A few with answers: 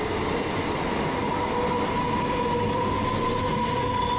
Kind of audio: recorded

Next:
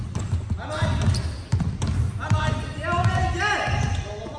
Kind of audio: recorded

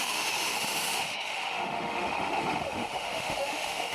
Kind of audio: remade